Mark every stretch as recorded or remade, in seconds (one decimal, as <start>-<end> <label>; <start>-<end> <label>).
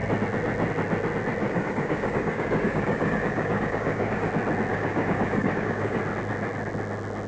0.0-1.4 recorded; 1.4-4.3 remade; 4.3-4.7 recorded; 4.7-6.0 remade; 6.0-7.3 recorded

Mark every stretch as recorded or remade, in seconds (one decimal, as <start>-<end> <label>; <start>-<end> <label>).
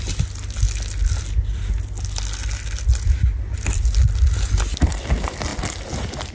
0.0-6.3 recorded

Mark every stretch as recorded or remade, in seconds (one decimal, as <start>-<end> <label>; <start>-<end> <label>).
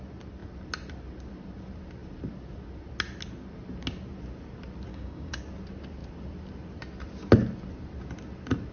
0.0-4.9 recorded; 4.9-5.4 remade; 5.4-8.7 recorded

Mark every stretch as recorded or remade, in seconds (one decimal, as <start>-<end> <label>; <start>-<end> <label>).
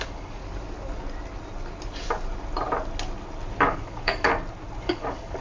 0.0-0.4 remade; 0.4-3.6 recorded; 3.6-4.3 remade; 4.3-4.8 recorded; 4.8-5.4 remade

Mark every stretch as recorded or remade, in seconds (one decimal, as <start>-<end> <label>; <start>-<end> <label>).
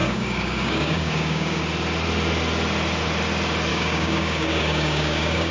0.0-1.6 remade; 1.6-3.7 recorded; 3.7-5.5 remade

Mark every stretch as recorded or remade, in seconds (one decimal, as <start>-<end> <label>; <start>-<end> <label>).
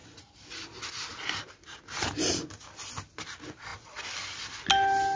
0.0-5.2 recorded